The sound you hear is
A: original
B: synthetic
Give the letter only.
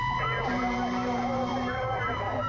B